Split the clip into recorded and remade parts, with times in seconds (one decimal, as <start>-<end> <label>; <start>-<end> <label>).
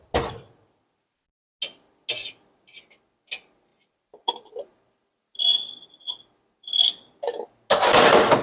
0.0-8.4 recorded